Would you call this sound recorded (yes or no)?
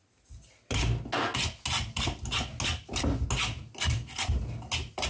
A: yes